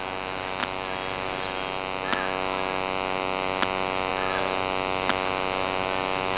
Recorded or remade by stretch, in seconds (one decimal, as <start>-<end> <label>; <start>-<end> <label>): 0.0-6.4 recorded